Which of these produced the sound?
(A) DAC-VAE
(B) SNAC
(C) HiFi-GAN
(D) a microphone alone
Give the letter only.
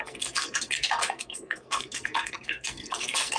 B